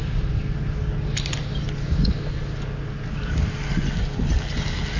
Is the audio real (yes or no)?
yes